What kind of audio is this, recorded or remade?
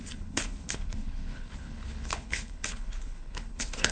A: remade